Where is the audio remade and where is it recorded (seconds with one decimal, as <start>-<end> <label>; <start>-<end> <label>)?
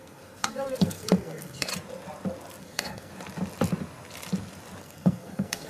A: 0.0-1.7 remade; 1.7-2.6 recorded; 2.6-3.1 remade; 3.1-4.8 recorded; 4.8-5.7 remade